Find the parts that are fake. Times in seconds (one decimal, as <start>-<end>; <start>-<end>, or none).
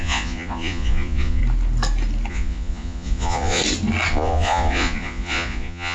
0.0-1.4; 2.3-3.6; 4.1-5.9